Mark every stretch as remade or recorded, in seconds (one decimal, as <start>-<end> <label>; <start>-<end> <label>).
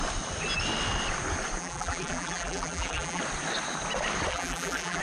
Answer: 0.0-1.6 recorded; 1.6-3.2 remade; 3.2-4.3 recorded; 4.3-5.0 remade